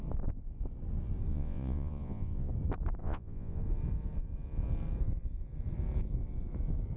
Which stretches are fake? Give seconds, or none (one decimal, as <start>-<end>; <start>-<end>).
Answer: 1.3-2.5; 3.0-3.6